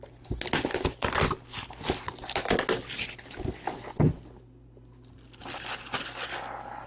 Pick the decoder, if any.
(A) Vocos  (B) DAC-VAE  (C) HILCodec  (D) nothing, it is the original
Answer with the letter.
D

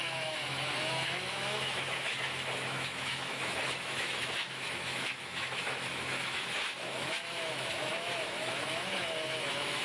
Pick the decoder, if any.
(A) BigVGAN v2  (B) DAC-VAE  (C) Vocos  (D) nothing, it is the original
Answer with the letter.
B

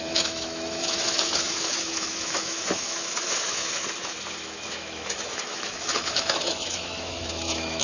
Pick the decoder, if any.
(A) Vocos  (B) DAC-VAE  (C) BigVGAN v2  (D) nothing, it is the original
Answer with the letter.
B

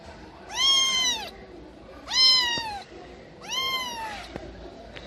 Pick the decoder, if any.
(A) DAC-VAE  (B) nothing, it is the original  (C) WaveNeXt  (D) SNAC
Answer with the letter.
B